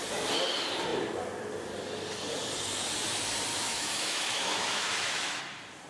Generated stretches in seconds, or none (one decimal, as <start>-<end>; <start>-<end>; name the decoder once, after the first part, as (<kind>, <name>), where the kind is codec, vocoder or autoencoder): 3.5-5.4 (autoencoder, DAC-VAE)